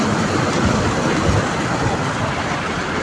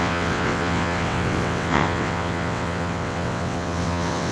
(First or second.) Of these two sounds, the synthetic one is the second